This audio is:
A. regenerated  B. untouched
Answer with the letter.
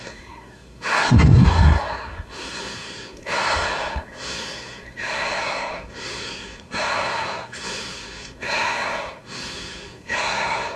A